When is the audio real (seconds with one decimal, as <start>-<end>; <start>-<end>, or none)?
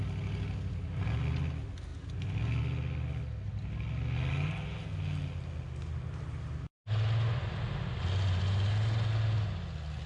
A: 0.0-10.1